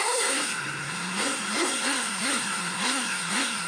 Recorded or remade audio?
remade